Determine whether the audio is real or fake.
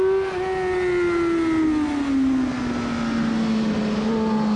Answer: real